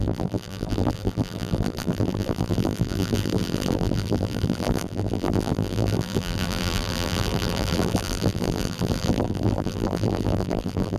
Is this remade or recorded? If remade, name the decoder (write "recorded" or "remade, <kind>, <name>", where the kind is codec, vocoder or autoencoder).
remade, vocoder, BigVGAN v2